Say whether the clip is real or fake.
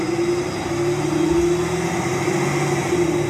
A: real